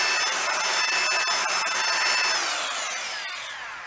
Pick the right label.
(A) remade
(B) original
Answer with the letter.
B